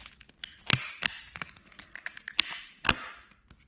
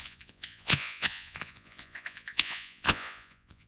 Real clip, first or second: first